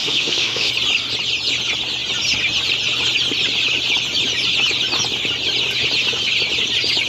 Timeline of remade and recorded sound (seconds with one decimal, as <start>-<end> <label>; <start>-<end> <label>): 0.0-0.7 remade; 0.7-7.1 recorded